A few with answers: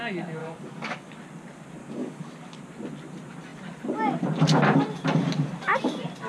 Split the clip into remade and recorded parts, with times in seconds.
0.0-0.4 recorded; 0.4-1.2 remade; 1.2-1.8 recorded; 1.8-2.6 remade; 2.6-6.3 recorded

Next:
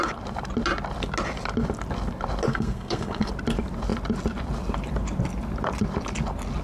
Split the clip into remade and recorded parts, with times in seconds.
0.0-2.5 recorded; 2.5-3.3 remade; 3.3-6.6 recorded

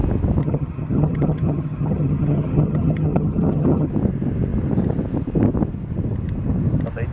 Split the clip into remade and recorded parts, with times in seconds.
0.0-0.4 recorded; 0.4-3.9 remade; 3.9-7.1 recorded